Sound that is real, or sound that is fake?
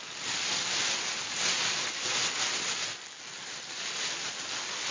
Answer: real